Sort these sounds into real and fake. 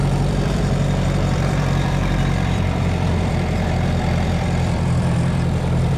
fake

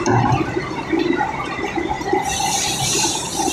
fake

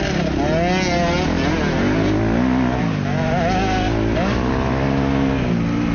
real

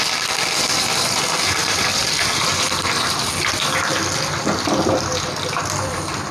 fake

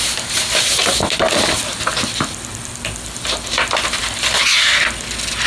real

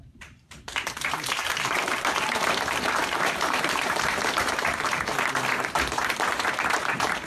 fake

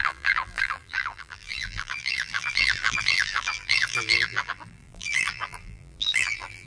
fake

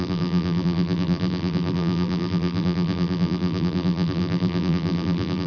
fake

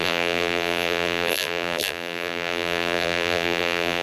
fake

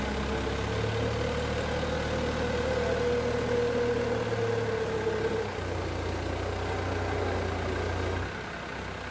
real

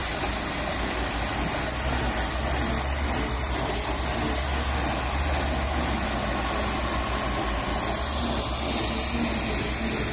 real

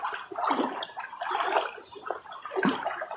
real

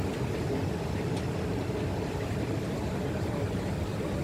real